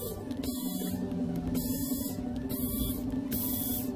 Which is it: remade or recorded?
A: recorded